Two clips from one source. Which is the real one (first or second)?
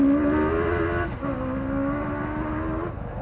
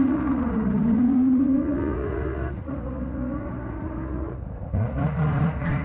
first